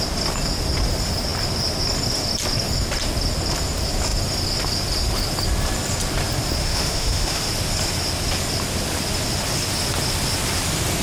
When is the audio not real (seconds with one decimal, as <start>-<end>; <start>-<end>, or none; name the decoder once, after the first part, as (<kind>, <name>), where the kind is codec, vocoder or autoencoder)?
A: 6.6-7.5 (autoencoder, DAC-VAE)